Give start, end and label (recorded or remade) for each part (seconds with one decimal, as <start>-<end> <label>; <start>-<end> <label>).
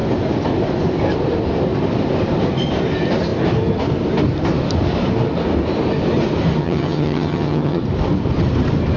0.0-6.6 recorded; 6.6-7.8 remade; 7.8-9.0 recorded